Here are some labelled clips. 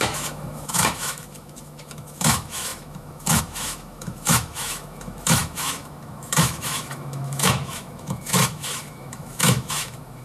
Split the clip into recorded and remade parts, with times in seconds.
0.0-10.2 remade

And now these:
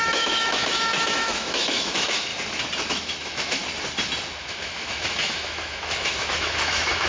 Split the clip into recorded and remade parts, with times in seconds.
0.0-2.3 remade; 2.3-2.9 recorded; 2.9-3.6 remade; 3.6-4.4 recorded; 4.4-7.1 remade

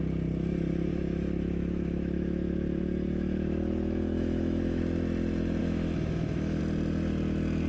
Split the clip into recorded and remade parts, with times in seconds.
0.0-0.9 recorded; 0.9-4.8 remade; 4.8-5.6 recorded; 5.6-6.6 remade; 6.6-7.7 recorded

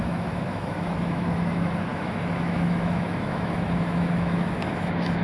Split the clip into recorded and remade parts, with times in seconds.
0.0-5.2 remade

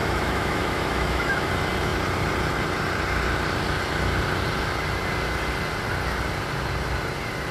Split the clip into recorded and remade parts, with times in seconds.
0.0-1.5 remade; 1.5-7.5 recorded

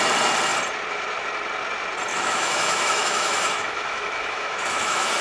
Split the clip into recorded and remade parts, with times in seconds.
0.0-2.1 recorded; 2.1-5.2 remade

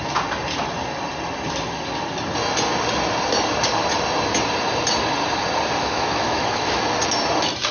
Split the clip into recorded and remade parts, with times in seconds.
0.0-5.8 recorded; 5.8-6.8 remade; 6.8-7.7 recorded

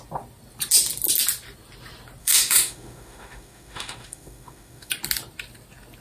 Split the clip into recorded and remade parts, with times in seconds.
0.0-2.2 recorded; 2.2-4.9 remade; 4.9-6.0 recorded